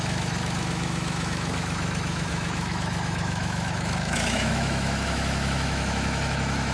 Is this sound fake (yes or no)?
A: yes